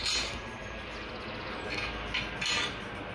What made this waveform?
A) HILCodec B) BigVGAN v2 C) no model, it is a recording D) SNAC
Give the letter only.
C